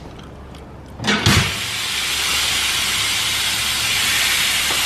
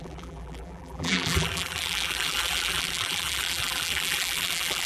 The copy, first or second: second